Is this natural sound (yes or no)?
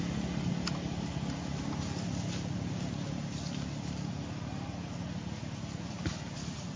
yes